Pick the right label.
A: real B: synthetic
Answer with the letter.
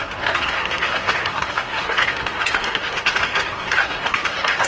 B